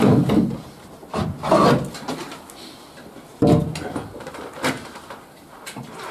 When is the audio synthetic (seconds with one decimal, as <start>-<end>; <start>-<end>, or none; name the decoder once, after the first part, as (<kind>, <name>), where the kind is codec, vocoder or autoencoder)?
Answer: 0.0-1.0 (vocoder, BigVGAN v2); 3.3-6.1